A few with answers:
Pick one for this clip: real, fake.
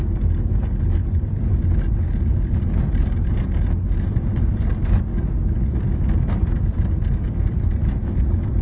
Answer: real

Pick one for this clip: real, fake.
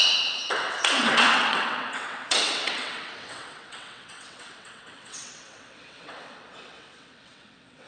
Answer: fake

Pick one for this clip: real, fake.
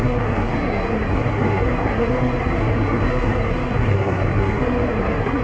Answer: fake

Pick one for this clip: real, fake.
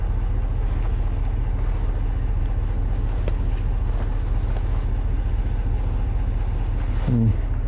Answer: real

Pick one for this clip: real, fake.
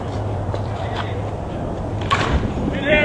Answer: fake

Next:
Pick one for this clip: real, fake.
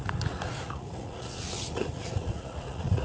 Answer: fake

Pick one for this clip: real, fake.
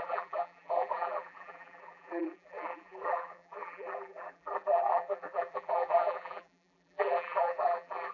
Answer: fake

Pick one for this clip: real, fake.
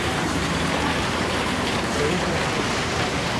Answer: fake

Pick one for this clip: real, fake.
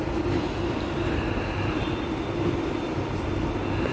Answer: real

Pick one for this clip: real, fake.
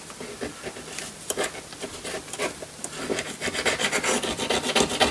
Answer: real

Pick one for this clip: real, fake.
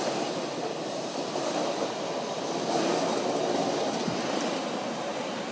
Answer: real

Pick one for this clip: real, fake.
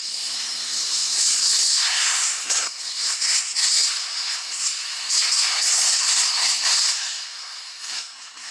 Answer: fake